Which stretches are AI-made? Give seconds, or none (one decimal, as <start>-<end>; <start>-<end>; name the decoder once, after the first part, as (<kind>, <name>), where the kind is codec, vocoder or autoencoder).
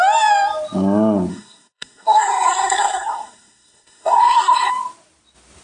1.3-4.7 (codec, SNAC)